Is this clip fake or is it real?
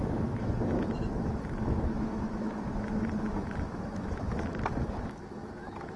fake